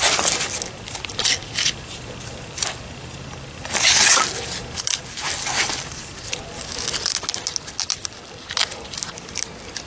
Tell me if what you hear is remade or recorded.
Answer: recorded